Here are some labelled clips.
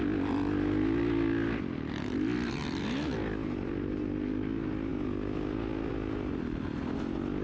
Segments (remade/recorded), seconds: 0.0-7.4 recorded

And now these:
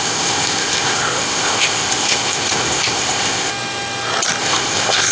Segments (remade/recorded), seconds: 0.0-3.5 remade; 3.5-4.4 recorded; 4.4-5.1 remade

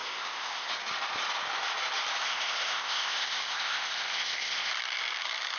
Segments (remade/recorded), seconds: 0.0-0.7 remade; 0.7-2.2 recorded; 2.2-4.7 remade; 4.7-5.6 recorded

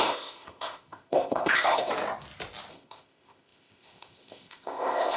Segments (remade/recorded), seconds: 0.0-1.9 remade; 1.9-2.7 recorded; 2.7-5.2 remade

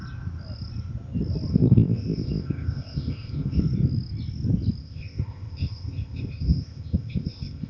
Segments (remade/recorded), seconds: 0.0-1.5 recorded; 1.5-3.6 remade; 3.6-4.8 recorded; 4.8-7.7 remade

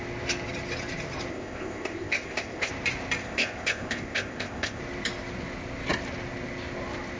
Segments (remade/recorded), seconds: 0.0-1.3 recorded; 1.3-2.7 remade; 2.7-3.2 recorded; 3.2-4.8 remade; 4.8-7.2 recorded

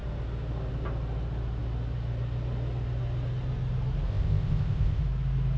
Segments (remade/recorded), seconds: 0.0-4.1 recorded; 4.1-5.0 remade; 5.0-5.6 recorded